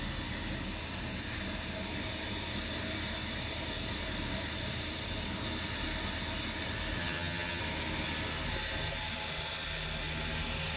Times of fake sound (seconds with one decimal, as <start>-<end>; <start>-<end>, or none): 7.0-7.6